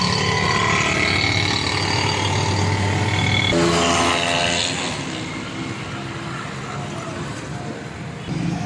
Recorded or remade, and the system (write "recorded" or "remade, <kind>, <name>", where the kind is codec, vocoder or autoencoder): recorded